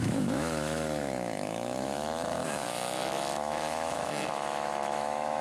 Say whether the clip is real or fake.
fake